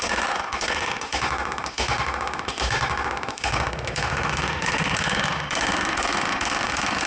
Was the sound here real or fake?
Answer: fake